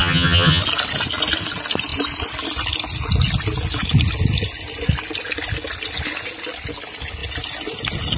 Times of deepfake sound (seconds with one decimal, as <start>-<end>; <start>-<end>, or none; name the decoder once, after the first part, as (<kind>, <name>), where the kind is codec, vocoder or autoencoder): 0.0-0.6 (vocoder, HiFi-GAN)